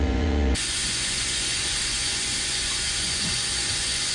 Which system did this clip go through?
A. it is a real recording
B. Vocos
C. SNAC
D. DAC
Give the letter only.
B